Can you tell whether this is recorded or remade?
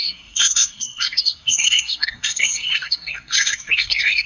remade